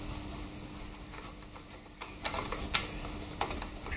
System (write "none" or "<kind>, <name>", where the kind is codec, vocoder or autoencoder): none